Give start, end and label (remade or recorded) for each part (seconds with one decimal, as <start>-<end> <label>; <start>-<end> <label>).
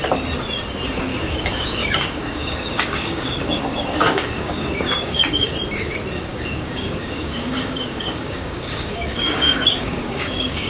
0.0-1.1 recorded; 1.1-5.5 remade; 5.5-6.3 recorded; 6.3-10.7 remade